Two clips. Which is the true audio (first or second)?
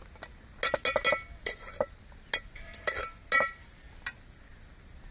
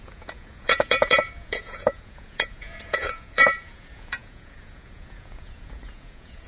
first